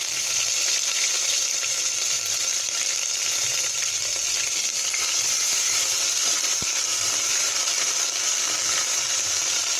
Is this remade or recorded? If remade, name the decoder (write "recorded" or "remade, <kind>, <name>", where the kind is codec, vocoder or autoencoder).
recorded